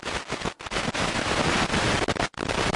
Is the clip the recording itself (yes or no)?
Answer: yes